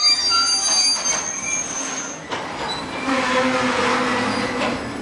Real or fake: real